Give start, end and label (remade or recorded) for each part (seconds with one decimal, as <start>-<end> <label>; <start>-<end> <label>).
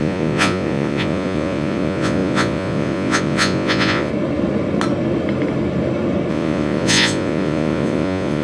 0.0-4.1 remade; 4.1-6.3 recorded; 6.3-8.4 remade